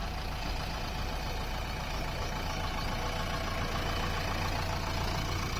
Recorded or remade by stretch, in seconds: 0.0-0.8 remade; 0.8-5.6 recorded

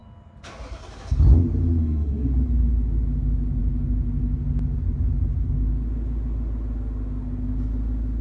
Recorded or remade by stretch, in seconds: 0.0-1.8 recorded; 1.8-2.3 remade; 2.3-8.2 recorded

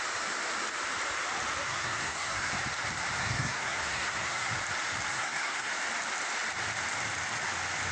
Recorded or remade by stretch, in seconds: 0.0-1.7 recorded; 1.7-2.5 remade; 2.5-3.2 recorded; 3.2-4.5 remade; 4.5-5.1 recorded; 5.1-5.7 remade; 5.7-7.9 recorded

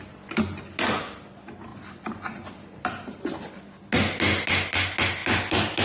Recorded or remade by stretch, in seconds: 0.0-5.8 recorded

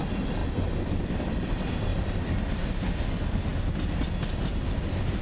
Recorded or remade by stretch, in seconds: 0.0-5.2 recorded